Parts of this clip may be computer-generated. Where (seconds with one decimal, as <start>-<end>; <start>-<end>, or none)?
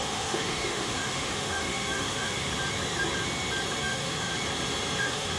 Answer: 0.0-2.5; 3.8-4.3; 5.0-5.4